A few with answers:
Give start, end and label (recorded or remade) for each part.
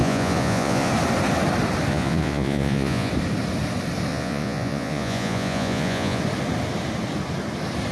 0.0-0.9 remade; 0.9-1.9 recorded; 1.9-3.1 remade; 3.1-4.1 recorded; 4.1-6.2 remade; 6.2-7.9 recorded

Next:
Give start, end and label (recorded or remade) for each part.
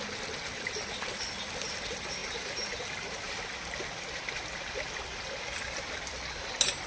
0.0-6.9 recorded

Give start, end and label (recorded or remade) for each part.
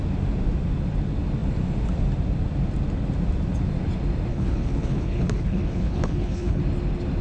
0.0-4.3 recorded; 4.3-6.6 remade; 6.6-7.2 recorded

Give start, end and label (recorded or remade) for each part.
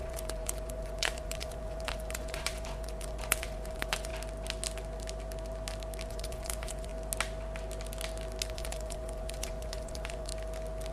0.0-4.1 remade; 4.1-6.1 recorded; 6.1-6.9 remade; 6.9-8.5 recorded; 8.5-10.3 remade; 10.3-10.9 recorded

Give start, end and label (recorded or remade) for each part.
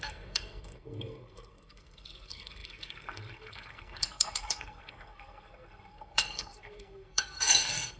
0.0-8.0 remade